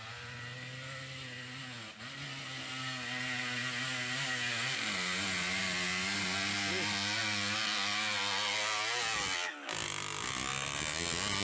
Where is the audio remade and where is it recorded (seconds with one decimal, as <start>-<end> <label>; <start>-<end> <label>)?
0.0-11.4 recorded